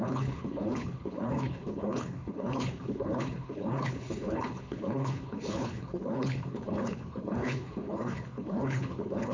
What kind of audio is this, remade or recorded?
remade